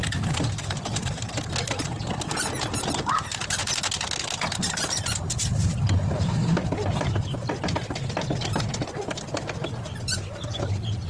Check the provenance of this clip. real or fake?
real